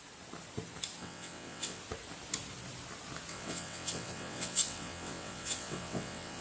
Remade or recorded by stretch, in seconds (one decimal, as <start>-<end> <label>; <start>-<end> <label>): 0.0-1.0 recorded; 1.0-1.8 remade; 1.8-3.3 recorded; 3.3-6.4 remade